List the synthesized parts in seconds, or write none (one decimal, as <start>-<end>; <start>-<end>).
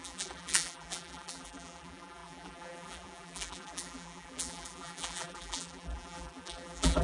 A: 0.0-7.0